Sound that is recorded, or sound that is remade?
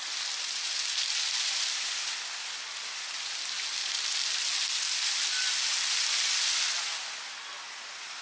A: recorded